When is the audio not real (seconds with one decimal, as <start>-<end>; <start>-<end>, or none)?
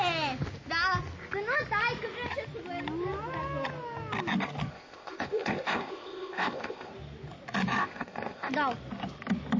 4.7-6.9; 7.8-8.5